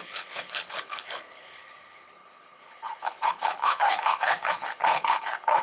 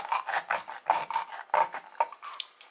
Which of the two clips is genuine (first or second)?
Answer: second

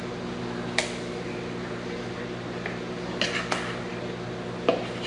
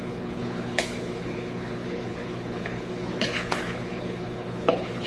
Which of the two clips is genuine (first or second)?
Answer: first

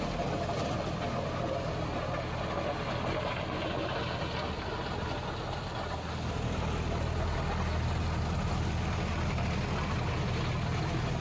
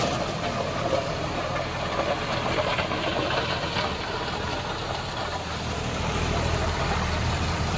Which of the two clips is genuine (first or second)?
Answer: first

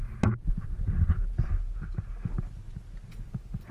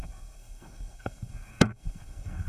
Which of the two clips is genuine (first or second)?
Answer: first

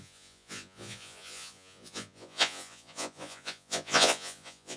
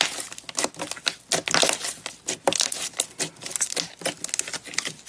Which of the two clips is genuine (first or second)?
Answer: second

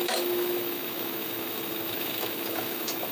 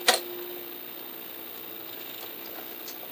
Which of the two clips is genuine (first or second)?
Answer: second